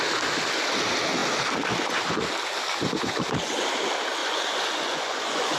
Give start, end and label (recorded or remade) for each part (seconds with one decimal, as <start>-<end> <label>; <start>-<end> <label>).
0.0-4.2 recorded; 4.2-5.6 remade